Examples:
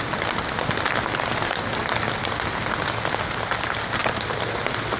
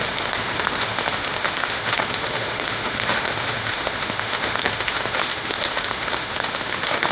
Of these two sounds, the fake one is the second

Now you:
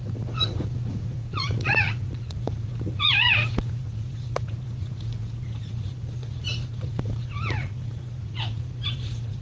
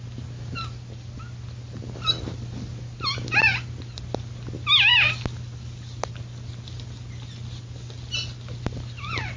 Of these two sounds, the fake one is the first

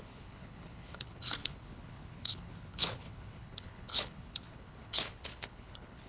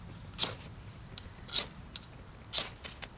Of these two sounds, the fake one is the first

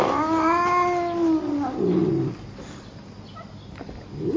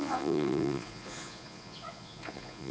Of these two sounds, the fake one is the second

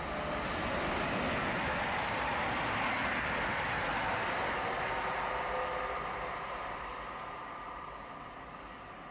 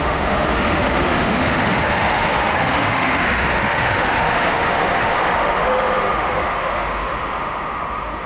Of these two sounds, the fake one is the second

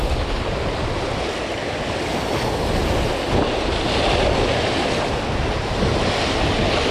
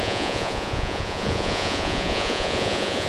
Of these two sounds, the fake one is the second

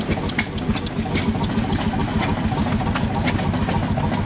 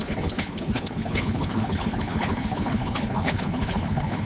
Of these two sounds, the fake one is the second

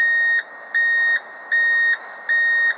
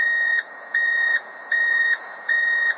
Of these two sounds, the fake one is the second